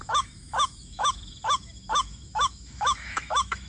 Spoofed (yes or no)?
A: yes